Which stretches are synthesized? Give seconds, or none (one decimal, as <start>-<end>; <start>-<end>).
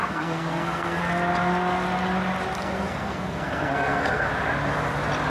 0.0-1.0; 2.6-4.3